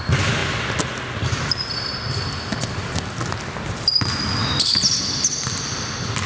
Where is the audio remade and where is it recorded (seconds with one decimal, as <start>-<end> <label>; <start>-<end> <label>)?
0.0-6.3 recorded